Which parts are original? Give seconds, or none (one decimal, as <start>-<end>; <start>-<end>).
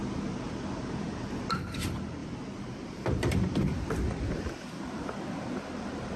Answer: 0.0-2.2